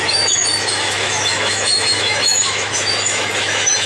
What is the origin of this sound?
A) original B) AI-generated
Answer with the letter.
B